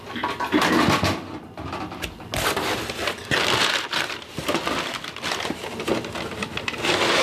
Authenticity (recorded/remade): recorded